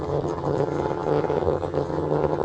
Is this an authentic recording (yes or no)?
no